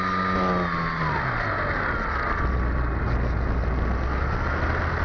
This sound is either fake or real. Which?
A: real